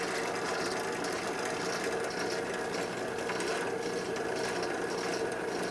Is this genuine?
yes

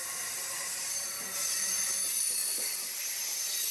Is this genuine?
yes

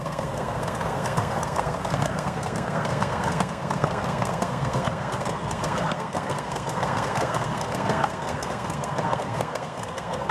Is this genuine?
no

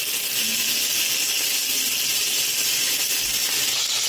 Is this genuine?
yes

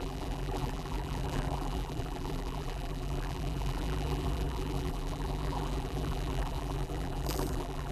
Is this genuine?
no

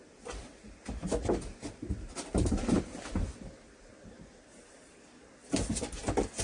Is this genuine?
yes